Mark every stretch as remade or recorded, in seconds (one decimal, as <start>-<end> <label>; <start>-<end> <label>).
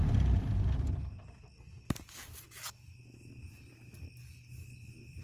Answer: 0.0-5.2 recorded